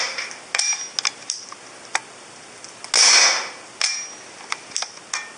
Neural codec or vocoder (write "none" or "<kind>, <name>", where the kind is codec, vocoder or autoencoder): none